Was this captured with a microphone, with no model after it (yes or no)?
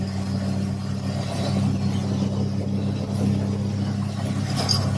yes